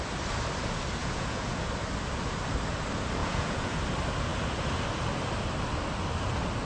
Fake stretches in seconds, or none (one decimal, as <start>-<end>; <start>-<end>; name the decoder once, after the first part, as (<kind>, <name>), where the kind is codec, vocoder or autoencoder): 1.0-1.6 (vocoder, Vocos); 3.2-3.8